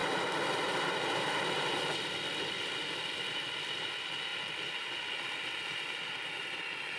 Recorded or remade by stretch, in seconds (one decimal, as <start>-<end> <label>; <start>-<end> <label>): 0.0-7.0 recorded